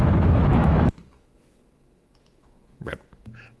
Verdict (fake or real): fake